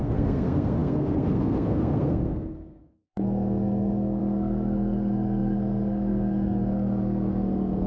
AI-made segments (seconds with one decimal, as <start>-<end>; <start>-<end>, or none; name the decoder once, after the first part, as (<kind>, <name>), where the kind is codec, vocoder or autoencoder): 0.0-7.9 (codec, SNAC)